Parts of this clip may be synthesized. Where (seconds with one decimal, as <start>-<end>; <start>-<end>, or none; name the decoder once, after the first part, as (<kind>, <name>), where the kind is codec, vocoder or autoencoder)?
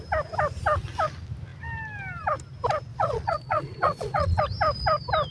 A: 2.9-4.4 (vocoder, Vocos)